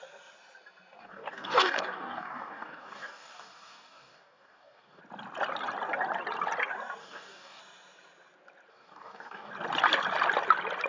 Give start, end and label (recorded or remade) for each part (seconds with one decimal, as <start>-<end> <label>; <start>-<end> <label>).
0.0-1.0 recorded; 1.0-5.0 remade; 5.0-7.0 recorded; 7.0-7.6 remade; 7.6-8.7 recorded; 8.7-9.5 remade; 9.5-10.9 recorded